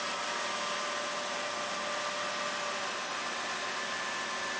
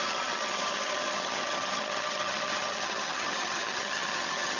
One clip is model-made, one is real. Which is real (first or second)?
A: first